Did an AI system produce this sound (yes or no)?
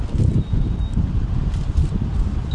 no